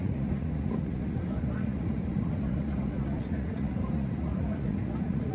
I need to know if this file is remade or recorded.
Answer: remade